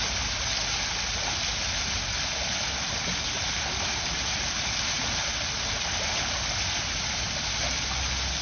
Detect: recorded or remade recorded